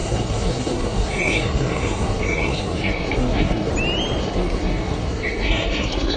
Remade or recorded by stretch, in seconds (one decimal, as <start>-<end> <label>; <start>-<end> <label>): 0.0-3.7 remade; 3.7-4.2 recorded; 4.2-6.2 remade

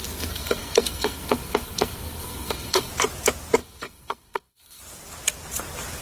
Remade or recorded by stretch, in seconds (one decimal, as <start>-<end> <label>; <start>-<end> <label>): 0.0-2.9 remade; 2.9-3.6 recorded; 3.6-4.8 remade; 4.8-6.0 recorded

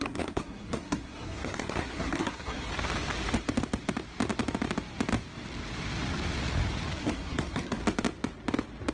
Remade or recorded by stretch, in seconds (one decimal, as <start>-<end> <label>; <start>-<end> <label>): 0.0-2.7 remade; 2.7-7.0 recorded; 7.0-7.8 remade; 7.8-8.9 recorded

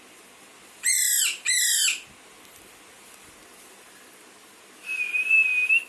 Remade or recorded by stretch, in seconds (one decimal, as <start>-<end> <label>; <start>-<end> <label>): 0.0-5.9 recorded